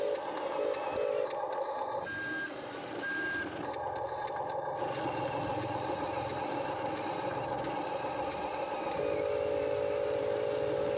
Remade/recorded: recorded